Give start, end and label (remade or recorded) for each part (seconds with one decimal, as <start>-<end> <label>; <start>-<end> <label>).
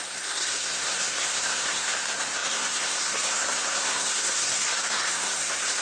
0.0-5.8 remade